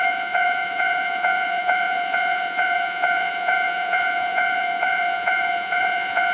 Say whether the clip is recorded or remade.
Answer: remade